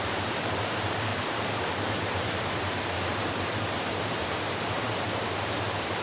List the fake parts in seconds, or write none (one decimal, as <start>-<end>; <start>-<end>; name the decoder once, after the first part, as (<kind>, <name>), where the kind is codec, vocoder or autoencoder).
0.0-6.0 (vocoder, BigVGAN v2)